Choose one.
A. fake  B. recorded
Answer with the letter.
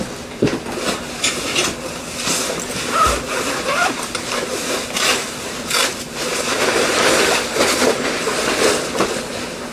B